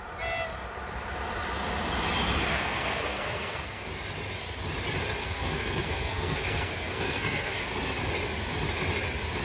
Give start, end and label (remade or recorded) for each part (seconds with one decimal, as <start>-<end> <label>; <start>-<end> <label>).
0.0-2.5 recorded; 2.5-3.9 remade; 3.9-5.2 recorded; 5.2-7.6 remade; 7.6-9.4 recorded